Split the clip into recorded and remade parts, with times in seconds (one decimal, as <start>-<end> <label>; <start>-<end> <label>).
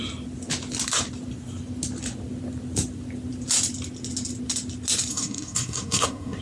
0.0-5.1 recorded; 5.1-6.4 remade